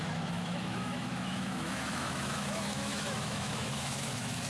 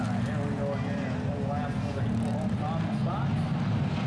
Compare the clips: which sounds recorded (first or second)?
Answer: second